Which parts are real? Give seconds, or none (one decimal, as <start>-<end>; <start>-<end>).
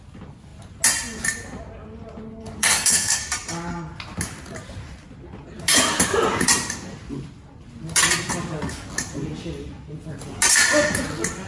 0.0-2.6; 3.2-11.5